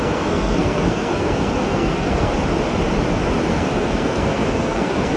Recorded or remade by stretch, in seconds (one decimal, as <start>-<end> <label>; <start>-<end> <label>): 0.0-2.3 remade; 2.3-3.5 recorded; 3.5-5.2 remade